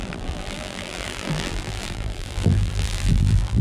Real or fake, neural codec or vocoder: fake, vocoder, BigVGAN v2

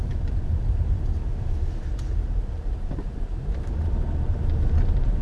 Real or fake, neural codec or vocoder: fake, vocoder, BigVGAN v2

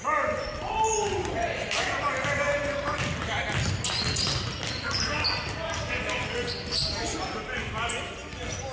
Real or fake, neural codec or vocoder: real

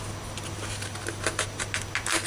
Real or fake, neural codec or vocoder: real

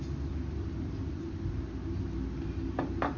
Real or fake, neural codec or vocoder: real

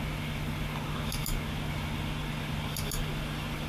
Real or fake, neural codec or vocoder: real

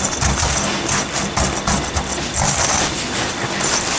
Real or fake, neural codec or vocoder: real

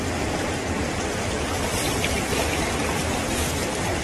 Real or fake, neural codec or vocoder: fake, vocoder, BigVGAN v2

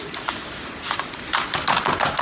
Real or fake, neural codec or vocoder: real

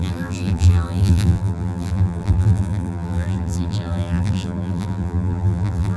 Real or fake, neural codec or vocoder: fake, vocoder, BigVGAN v2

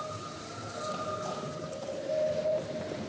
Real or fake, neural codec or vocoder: fake, vocoder, BigVGAN v2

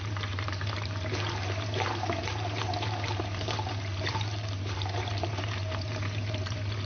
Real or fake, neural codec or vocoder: fake, vocoder, BigVGAN v2